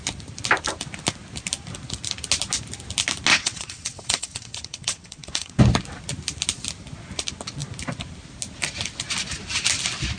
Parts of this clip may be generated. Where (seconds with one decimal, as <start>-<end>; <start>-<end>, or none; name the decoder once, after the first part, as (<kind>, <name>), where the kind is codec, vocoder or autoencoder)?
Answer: 3.3-5.6 (vocoder, WaveNeXt)